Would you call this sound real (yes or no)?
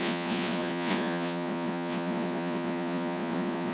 no